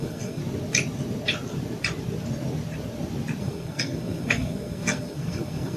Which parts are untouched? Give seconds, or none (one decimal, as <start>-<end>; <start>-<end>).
0.4-3.4